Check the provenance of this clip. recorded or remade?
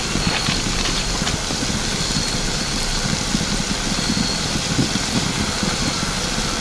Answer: recorded